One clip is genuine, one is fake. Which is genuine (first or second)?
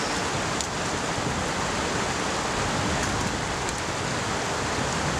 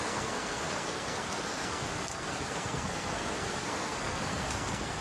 first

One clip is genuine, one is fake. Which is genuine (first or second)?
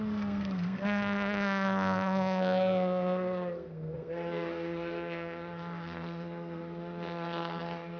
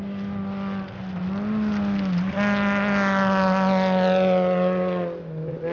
second